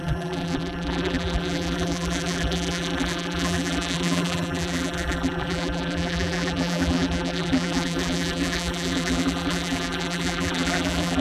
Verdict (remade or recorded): remade